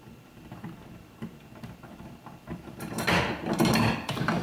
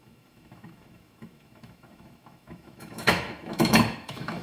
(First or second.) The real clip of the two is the first